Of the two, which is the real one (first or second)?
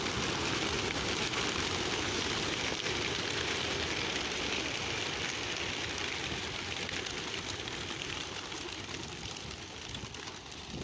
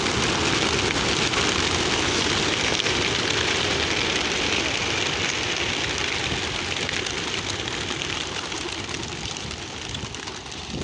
second